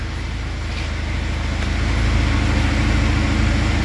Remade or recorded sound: recorded